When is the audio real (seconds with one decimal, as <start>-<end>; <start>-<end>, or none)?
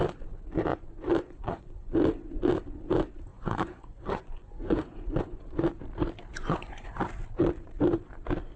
0.0-0.7; 1.9-3.3; 5.4-6.3; 7.0-8.6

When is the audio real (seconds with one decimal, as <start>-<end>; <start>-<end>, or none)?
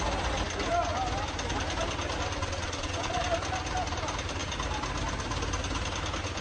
0.0-2.4; 3.2-6.4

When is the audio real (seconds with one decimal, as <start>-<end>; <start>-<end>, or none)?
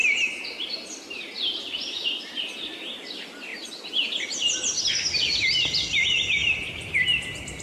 2.4-6.4; 6.9-7.6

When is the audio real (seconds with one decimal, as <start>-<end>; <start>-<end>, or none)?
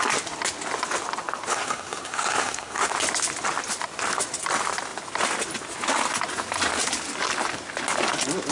0.0-1.5; 2.9-8.5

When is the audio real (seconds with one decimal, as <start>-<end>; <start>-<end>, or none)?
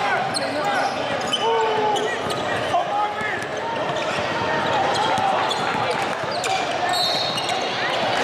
0.0-5.9; 6.7-8.2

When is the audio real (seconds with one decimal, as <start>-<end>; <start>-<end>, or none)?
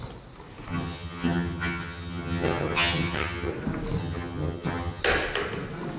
0.0-0.7; 3.5-4.0; 5.0-6.0